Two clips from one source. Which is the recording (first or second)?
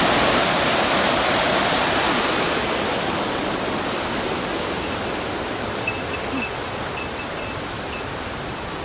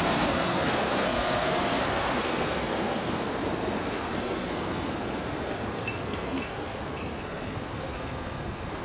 first